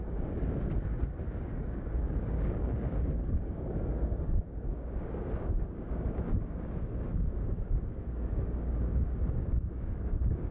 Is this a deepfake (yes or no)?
yes